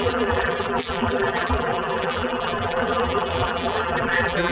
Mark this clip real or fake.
fake